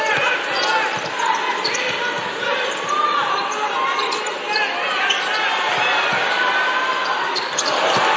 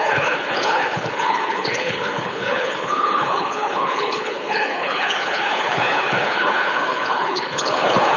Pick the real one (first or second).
first